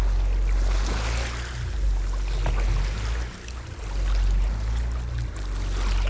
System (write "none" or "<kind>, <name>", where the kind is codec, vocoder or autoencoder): none